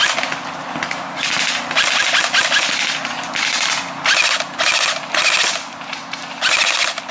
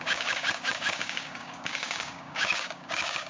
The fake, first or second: second